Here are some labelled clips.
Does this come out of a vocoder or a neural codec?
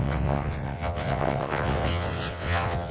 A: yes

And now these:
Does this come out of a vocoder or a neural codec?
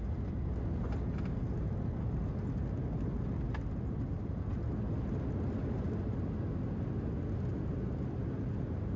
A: no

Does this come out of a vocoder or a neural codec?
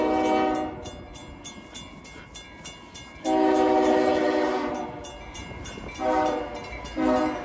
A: no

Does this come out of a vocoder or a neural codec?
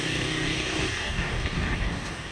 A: yes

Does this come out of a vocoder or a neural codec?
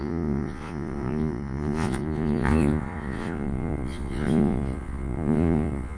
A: yes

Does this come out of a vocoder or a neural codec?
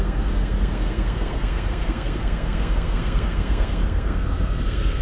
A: yes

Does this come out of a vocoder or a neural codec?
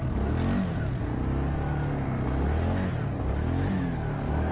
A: no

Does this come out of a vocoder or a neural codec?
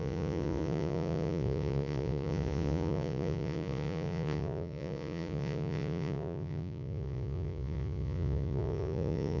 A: yes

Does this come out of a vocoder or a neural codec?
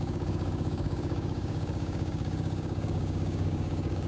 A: yes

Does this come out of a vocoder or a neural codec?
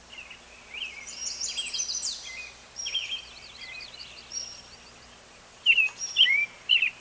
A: no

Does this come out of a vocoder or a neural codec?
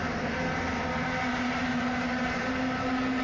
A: yes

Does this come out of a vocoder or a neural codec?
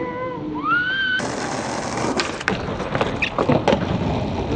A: no